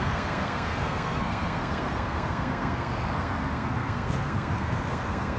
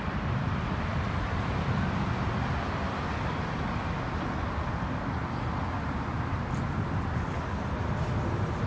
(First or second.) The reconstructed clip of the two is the first